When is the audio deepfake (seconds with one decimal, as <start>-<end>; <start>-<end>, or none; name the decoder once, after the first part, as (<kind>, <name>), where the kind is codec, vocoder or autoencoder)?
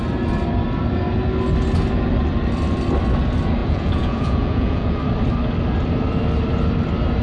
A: 3.6-5.0 (vocoder, Vocos)